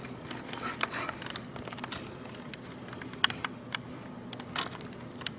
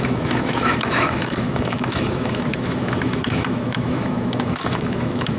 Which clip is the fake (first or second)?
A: second